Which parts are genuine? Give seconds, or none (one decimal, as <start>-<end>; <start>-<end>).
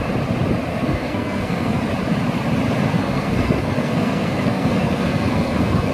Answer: 0.0-0.7; 1.8-2.9